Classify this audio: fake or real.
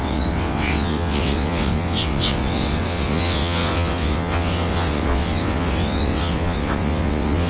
fake